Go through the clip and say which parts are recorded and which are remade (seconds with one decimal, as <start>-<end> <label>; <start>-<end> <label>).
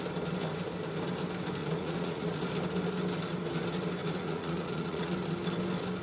0.0-1.6 recorded; 1.6-2.4 remade; 2.4-4.0 recorded; 4.0-5.1 remade; 5.1-6.0 recorded